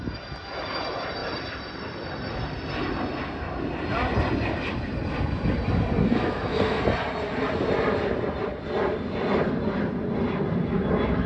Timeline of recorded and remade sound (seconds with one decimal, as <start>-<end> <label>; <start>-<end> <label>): 0.0-6.0 recorded; 6.0-6.8 remade; 6.8-11.3 recorded